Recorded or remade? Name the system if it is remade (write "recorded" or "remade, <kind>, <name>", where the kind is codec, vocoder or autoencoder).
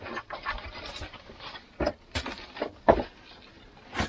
recorded